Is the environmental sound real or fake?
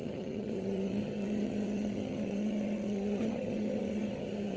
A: fake